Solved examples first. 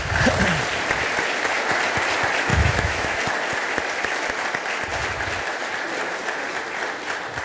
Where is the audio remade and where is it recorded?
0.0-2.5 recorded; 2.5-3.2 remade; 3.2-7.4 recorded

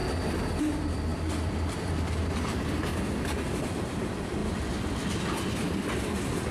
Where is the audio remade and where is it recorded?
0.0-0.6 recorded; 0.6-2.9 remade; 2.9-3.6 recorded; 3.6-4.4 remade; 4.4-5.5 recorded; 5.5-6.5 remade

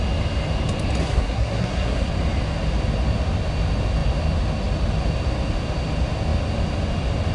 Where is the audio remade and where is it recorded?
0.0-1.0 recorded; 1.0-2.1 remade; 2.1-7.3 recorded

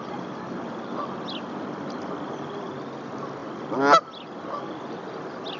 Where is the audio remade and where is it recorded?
0.0-5.6 recorded

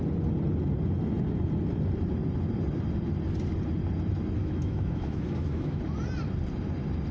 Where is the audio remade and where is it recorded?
0.0-4.4 recorded; 4.4-5.8 remade; 5.8-7.1 recorded

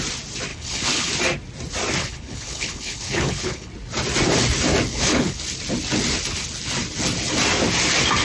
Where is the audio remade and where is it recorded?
0.0-0.5 recorded; 0.5-1.1 remade; 1.1-2.0 recorded; 2.0-3.7 remade; 3.7-4.9 recorded; 4.9-5.4 remade; 5.4-8.2 recorded

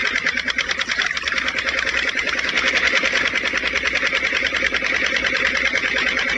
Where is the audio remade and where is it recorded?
0.0-6.4 recorded